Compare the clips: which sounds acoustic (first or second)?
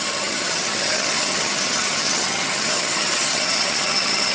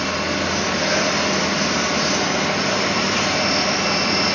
second